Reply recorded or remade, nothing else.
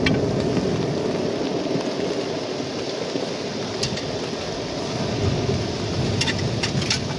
recorded